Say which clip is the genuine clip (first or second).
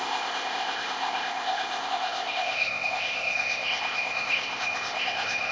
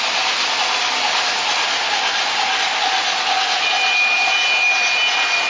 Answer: second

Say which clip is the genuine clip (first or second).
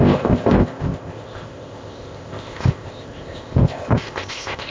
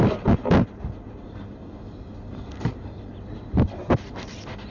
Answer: second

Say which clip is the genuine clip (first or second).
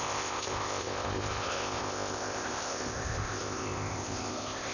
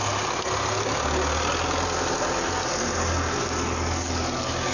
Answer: second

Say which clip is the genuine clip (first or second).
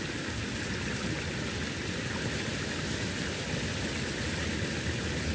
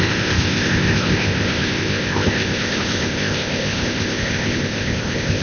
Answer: first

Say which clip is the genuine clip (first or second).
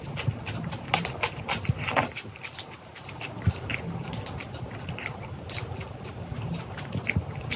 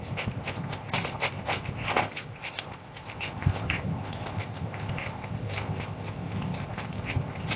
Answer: first